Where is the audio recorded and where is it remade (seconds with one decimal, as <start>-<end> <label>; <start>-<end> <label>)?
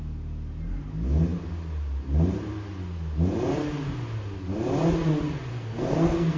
0.0-5.5 recorded; 5.5-6.4 remade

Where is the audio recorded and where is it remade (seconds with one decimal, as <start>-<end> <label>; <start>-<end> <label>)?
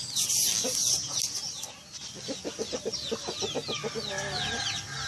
0.0-5.1 recorded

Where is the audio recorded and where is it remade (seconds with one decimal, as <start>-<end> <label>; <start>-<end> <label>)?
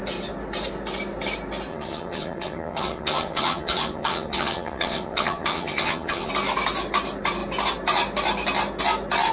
0.0-1.7 recorded; 1.7-6.3 remade; 6.3-9.3 recorded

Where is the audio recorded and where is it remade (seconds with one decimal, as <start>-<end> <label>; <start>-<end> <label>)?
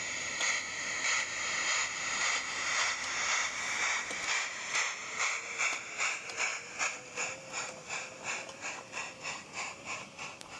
0.0-10.6 recorded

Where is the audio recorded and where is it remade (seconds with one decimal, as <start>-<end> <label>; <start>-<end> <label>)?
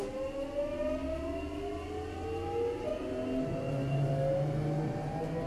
0.0-5.5 recorded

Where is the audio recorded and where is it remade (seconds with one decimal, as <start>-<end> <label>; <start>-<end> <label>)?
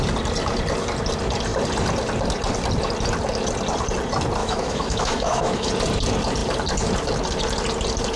0.0-4.4 recorded; 4.4-5.7 remade; 5.7-8.2 recorded